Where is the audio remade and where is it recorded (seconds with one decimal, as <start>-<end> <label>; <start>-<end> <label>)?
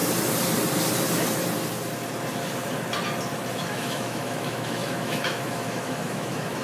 0.0-3.5 recorded; 3.5-6.6 remade